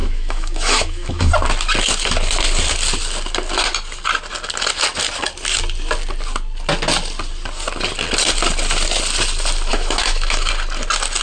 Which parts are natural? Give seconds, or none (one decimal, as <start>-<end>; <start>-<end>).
1.3-9.7; 10.5-11.2